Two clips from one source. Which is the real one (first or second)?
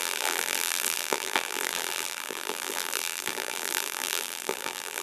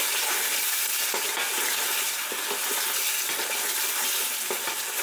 second